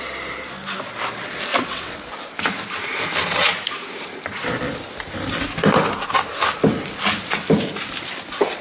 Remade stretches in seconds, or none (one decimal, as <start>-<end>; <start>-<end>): 1.5-2.1